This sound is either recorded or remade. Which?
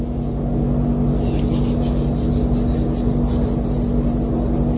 recorded